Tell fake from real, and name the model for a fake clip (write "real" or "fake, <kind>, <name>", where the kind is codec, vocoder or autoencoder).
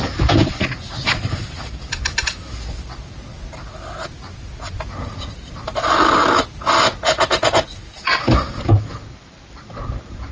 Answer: real